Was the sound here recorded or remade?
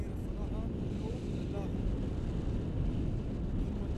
recorded